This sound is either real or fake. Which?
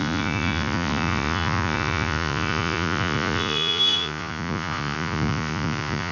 fake